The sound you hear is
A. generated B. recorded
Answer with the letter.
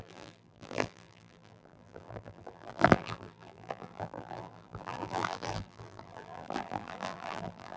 A